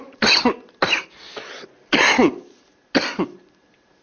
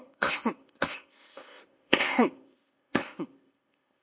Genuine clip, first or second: first